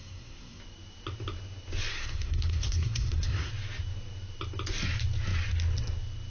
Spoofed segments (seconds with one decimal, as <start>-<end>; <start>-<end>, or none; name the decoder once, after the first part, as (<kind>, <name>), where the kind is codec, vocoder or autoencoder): 0.0-0.6 (codec, SNAC); 1.9-3.5

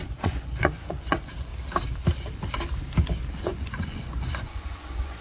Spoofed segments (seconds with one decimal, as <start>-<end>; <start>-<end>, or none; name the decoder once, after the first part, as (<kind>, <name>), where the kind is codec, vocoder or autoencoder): 0.0-1.5 (vocoder, Vocos); 3.4-5.2

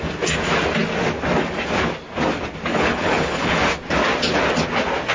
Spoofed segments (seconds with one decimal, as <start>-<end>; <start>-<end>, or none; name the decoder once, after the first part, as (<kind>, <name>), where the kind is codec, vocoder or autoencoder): 2.7-3.6 (codec, HILCodec)

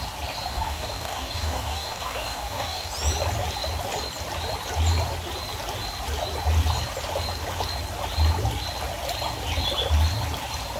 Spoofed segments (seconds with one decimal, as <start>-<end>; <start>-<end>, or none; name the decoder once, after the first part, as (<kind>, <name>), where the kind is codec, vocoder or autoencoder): 0.5-2.9 (codec, DAC)

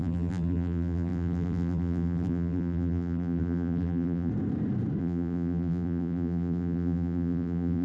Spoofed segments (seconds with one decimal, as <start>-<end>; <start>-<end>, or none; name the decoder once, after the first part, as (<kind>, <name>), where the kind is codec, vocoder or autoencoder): 0.0-4.3 (vocoder, BigVGAN v2); 5.0-7.8

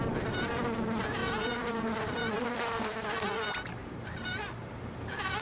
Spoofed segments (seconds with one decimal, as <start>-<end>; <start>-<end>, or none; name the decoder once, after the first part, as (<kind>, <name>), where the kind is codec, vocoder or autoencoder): 3.8-4.4 (vocoder, BigVGAN v2)

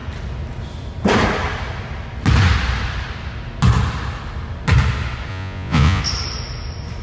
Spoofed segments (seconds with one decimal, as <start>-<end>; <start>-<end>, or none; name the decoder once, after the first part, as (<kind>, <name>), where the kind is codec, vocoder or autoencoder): 5.3-6.0 (vocoder, Vocos)